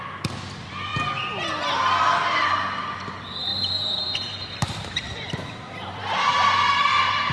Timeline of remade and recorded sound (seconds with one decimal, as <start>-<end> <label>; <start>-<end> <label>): 0.0-3.5 recorded; 3.5-7.3 remade